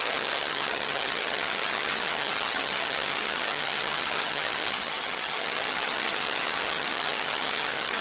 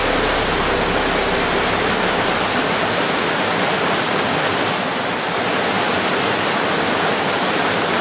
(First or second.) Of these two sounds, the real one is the second